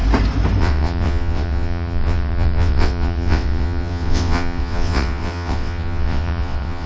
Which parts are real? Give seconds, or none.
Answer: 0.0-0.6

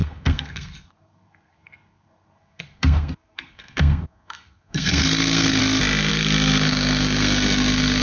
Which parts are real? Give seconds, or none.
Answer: 5.6-6.1

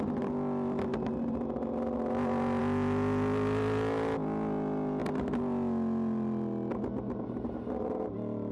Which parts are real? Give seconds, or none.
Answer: 0.0-8.5

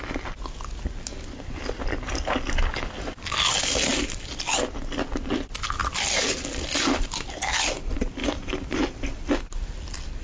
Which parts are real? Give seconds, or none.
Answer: 0.0-5.8; 7.4-8.2; 9.3-10.2

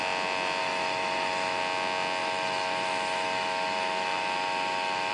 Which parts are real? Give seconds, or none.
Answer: 0.0-0.6; 1.6-2.2

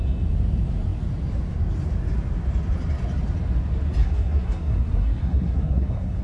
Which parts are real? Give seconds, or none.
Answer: 0.0-4.0